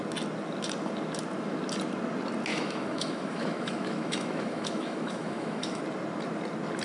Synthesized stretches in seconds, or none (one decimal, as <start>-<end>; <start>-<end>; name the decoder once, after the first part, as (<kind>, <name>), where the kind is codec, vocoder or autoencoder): 2.5-5.8 (autoencoder, DAC-VAE)